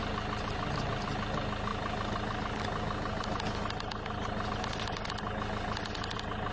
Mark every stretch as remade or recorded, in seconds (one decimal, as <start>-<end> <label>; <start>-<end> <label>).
0.0-6.5 recorded